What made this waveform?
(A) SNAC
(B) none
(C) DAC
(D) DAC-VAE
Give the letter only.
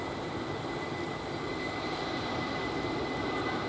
B